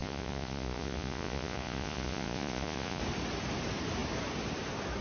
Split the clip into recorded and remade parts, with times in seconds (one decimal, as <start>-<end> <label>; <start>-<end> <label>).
0.0-3.0 remade; 3.0-5.0 recorded